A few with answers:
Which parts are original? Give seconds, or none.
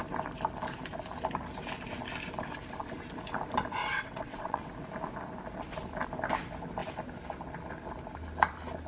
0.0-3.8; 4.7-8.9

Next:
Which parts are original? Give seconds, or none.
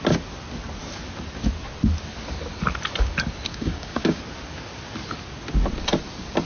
0.0-3.5; 4.2-6.4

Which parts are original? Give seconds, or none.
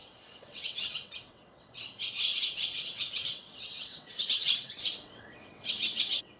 1.8-2.3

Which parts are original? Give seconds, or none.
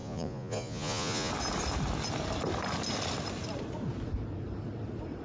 1.3-5.2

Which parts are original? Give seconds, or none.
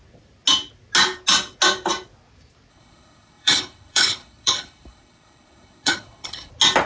0.0-2.7; 6.5-6.9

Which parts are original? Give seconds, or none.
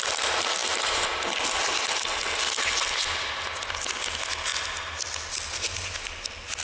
0.0-6.6